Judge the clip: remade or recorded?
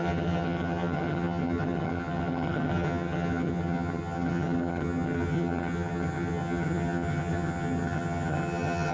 remade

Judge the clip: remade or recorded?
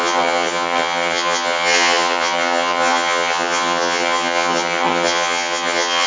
remade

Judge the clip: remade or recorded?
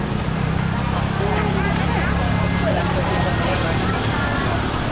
recorded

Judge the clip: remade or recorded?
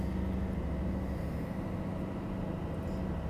recorded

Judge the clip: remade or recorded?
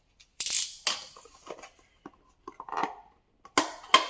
recorded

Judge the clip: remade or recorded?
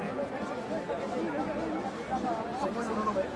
recorded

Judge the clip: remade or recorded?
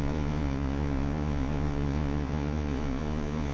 remade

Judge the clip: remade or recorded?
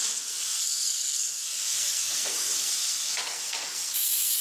remade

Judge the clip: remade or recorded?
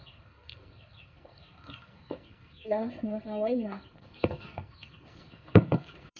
remade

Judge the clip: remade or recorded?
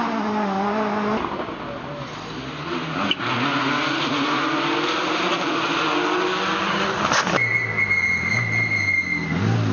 recorded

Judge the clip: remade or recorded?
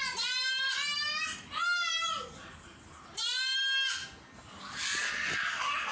recorded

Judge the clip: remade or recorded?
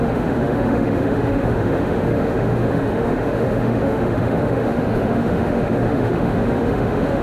remade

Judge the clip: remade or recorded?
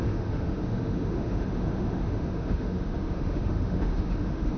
remade